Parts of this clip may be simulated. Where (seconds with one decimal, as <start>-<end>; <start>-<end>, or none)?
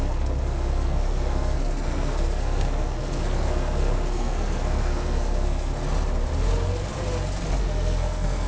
0.0-5.7; 7.6-8.5